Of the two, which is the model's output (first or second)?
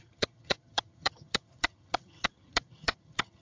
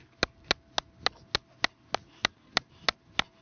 first